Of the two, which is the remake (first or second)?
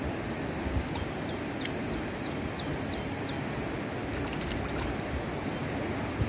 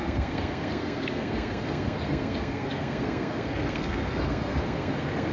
second